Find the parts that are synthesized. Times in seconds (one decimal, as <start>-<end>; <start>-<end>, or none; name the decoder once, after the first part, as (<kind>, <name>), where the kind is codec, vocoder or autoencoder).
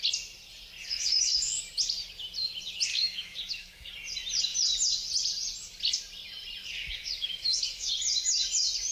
0.8-1.6 (codec, DAC); 2.9-3.9; 6.6-7.9